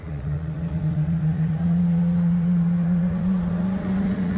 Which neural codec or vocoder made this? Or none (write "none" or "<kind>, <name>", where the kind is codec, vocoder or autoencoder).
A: vocoder, Vocos